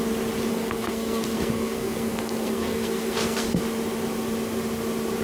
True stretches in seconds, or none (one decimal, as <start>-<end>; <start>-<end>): 0.0-0.5; 3.6-5.2